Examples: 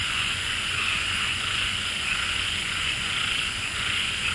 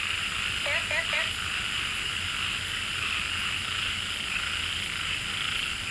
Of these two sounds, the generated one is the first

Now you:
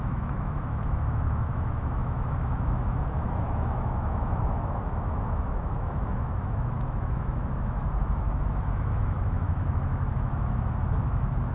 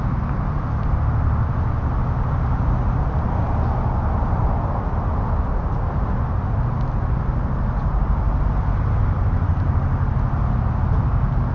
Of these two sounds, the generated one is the first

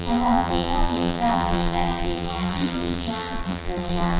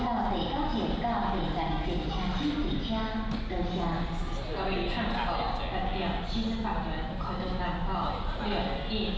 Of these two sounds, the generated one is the first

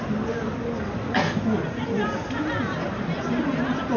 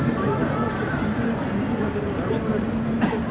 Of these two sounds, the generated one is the second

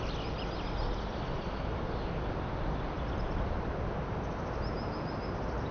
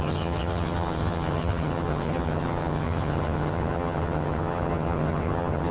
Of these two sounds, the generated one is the second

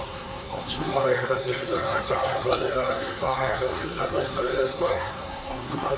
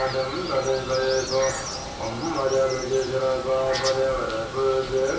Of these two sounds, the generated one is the first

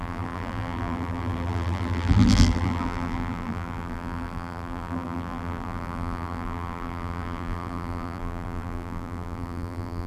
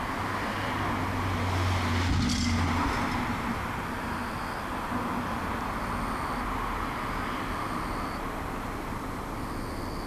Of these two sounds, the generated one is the first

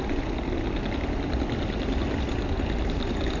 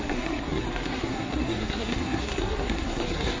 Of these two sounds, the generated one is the second